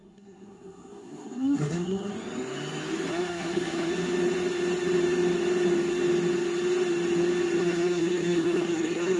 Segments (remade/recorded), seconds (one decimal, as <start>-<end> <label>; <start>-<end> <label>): 0.0-2.1 remade; 2.1-3.1 recorded; 3.1-3.9 remade; 3.9-7.6 recorded; 7.6-9.2 remade